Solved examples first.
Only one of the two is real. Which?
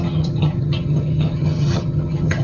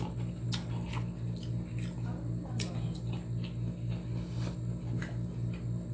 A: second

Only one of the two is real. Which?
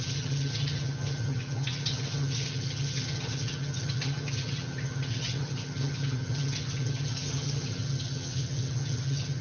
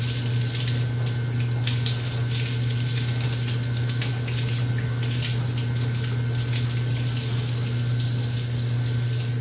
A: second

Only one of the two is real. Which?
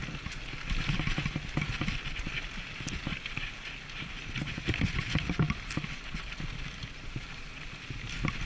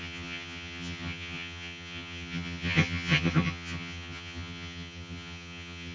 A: first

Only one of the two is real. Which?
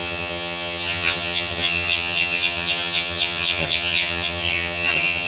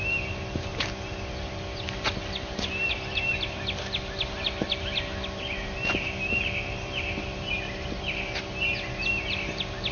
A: second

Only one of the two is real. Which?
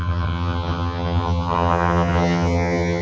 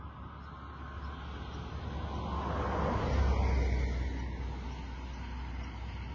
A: second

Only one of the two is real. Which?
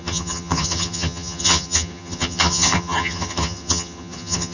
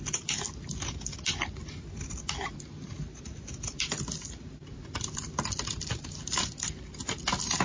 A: second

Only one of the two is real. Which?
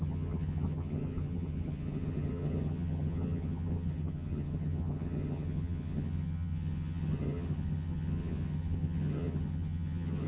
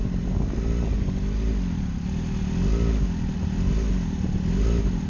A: second